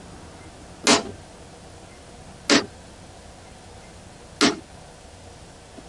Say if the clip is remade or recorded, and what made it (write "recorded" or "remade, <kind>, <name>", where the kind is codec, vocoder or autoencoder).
recorded